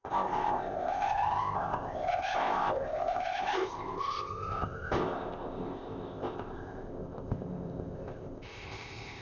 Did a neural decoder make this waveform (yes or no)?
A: yes